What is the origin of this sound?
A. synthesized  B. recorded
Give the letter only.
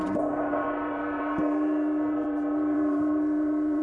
A